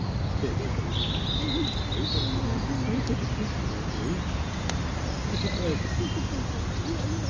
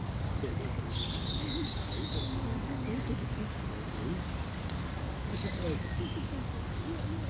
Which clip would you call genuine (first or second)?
first